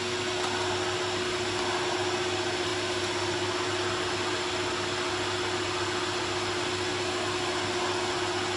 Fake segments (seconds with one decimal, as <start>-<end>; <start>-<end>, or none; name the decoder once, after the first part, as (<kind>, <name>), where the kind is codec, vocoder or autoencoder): none